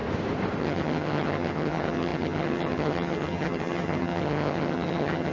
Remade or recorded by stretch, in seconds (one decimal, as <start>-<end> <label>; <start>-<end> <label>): 0.0-0.6 recorded; 0.6-5.3 remade